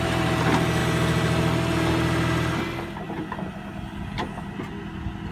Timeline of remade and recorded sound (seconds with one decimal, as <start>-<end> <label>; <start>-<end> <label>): 0.0-5.3 recorded